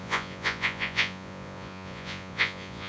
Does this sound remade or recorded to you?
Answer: remade